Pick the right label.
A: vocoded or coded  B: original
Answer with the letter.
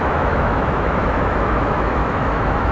A